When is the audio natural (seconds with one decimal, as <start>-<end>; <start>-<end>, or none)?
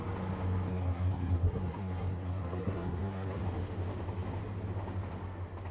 0.0-0.7; 3.4-5.7